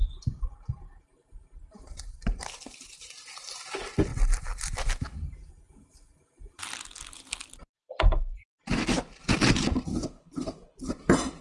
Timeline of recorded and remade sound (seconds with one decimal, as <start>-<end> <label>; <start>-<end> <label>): 0.0-9.9 recorded; 9.9-10.9 remade; 10.9-11.4 recorded